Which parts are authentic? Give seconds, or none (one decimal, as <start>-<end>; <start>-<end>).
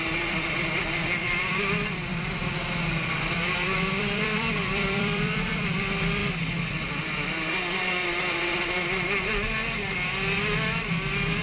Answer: 2.1-2.7; 6.2-11.4